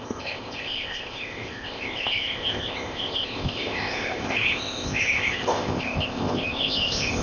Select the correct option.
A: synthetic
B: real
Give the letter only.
A